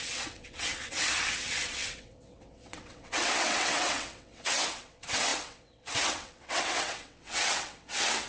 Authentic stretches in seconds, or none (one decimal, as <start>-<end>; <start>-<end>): none